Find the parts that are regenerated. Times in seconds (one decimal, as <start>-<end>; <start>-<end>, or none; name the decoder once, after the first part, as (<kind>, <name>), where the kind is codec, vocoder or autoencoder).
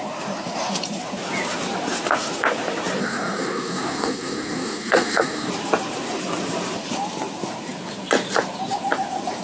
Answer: 3.0-5.5 (codec, SNAC)